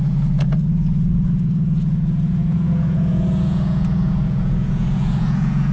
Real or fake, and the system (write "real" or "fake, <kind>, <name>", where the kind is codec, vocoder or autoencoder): fake, vocoder, Vocos